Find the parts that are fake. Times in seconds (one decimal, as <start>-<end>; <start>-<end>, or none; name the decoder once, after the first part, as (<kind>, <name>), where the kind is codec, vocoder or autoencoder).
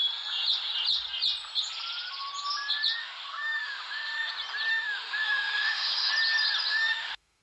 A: 3.0-4.3 (autoencoder, DAC-VAE); 4.7-6.1; 6.7-7.4